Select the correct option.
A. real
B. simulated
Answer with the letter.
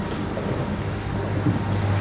A